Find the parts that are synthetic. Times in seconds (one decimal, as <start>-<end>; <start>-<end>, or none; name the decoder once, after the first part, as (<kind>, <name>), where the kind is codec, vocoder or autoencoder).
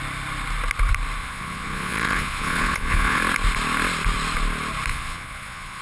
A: 1.2-3.2 (vocoder, Vocos); 4.9-5.8